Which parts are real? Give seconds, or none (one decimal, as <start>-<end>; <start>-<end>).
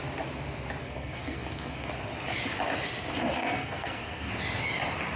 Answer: 0.0-0.8; 1.9-3.4; 4.3-5.2